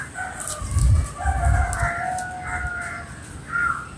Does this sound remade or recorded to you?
recorded